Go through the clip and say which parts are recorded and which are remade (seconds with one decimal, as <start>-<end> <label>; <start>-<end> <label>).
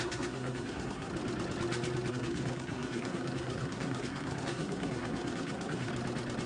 0.0-1.1 remade; 1.1-2.1 recorded; 2.1-5.9 remade; 5.9-6.5 recorded